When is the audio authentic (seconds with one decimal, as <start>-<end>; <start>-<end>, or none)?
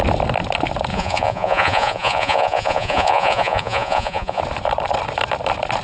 0.0-0.9; 4.4-5.8